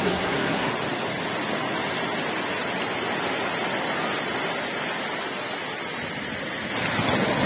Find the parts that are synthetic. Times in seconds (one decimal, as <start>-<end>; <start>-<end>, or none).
0.0-0.7

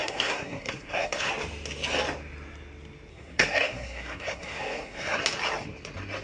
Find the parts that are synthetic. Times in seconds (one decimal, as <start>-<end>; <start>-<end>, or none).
0.0-1.3; 3.1-5.2